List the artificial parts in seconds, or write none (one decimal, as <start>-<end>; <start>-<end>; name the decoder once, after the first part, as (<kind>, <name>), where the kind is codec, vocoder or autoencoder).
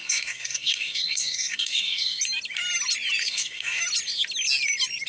0.0-2.2 (codec, SNAC); 3.2-3.8